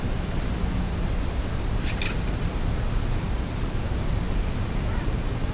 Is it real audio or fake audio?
fake